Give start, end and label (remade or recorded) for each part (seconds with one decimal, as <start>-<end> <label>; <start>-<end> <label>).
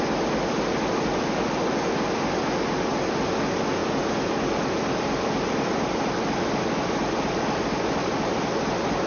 0.0-9.1 recorded